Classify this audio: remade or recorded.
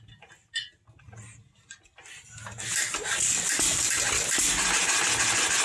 recorded